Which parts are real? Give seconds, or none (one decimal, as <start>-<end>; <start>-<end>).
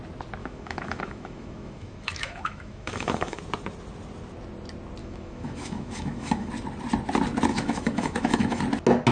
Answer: 0.0-0.4; 3.4-5.0; 6.5-7.5; 8.6-9.1